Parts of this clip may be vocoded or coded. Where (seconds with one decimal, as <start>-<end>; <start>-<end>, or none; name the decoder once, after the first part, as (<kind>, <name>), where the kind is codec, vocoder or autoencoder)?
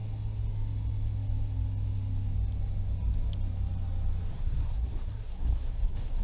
4.3-6.2 (codec, SNAC)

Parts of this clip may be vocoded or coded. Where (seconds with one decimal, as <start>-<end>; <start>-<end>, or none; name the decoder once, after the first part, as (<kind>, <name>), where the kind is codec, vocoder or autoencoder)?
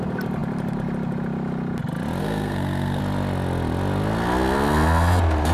2.2-3.0 (codec, SNAC)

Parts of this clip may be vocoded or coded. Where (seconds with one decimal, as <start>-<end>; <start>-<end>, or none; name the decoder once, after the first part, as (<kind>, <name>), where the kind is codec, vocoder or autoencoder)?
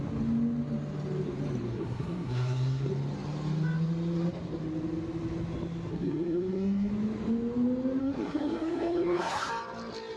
1.7-2.9 (codec, SNAC); 5.9-6.9; 8.0-9.5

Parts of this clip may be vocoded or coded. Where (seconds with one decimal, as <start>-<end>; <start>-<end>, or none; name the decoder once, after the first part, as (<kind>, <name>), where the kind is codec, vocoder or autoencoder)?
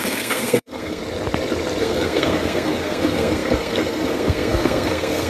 0.0-1.0 (codec, SNAC); 1.8-5.3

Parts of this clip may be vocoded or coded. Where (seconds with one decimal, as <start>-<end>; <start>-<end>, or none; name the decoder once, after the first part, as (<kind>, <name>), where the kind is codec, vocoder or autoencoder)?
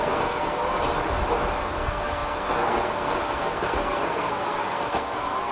0.0-0.6 (codec, SNAC); 1.6-5.5